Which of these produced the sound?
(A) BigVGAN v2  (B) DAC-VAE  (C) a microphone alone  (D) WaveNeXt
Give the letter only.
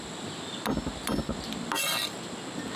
C